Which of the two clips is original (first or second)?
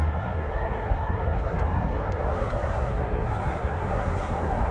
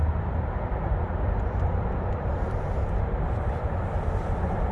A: second